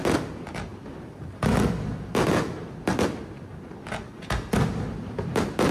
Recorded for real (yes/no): yes